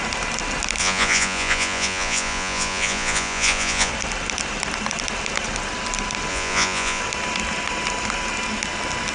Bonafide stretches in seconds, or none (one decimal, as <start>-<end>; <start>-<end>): 0.0-0.8; 3.9-6.3; 7.0-9.1